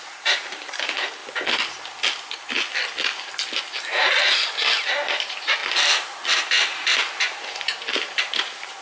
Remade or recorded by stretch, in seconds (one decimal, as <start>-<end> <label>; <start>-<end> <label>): 0.0-1.2 remade; 1.2-4.9 recorded; 4.9-5.6 remade; 5.6-7.2 recorded; 7.2-8.8 remade